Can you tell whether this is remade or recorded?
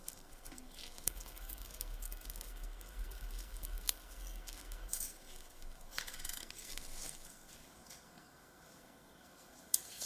remade